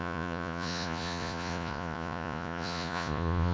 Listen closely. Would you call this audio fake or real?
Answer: fake